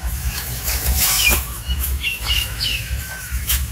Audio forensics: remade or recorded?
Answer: remade